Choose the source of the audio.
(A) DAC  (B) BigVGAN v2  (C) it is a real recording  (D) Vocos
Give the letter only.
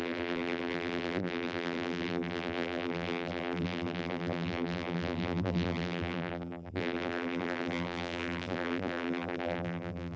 B